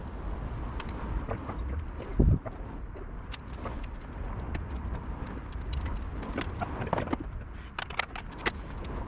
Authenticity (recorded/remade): recorded